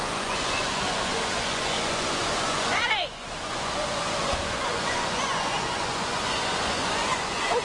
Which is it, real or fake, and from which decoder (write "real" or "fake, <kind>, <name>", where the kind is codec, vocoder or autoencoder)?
fake, vocoder, Vocos